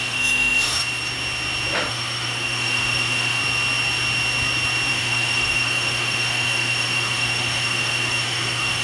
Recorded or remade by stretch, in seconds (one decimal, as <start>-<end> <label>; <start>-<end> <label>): 0.0-0.8 remade; 0.8-1.9 recorded; 1.9-3.4 remade; 3.4-4.9 recorded; 4.9-8.8 remade